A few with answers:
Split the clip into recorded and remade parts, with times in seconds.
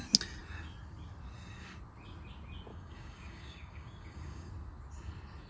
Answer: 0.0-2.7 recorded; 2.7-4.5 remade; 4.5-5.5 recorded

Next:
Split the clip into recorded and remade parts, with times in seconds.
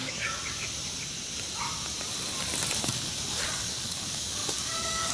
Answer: 0.0-0.4 remade; 0.4-2.8 recorded; 2.8-5.1 remade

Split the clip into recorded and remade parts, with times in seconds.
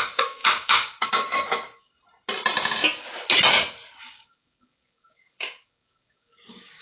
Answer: 0.0-1.9 remade; 1.9-4.1 recorded; 4.1-6.8 remade